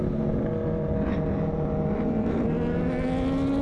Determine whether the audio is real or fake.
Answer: real